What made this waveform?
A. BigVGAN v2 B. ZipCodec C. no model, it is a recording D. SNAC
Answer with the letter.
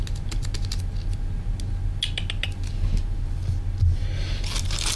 C